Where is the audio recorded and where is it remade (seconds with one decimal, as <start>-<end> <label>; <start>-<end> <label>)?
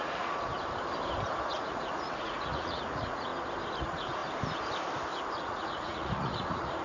0.0-0.5 remade; 0.5-1.5 recorded; 1.5-3.3 remade; 3.3-3.8 recorded; 3.8-4.2 remade; 4.2-5.4 recorded; 5.4-6.8 remade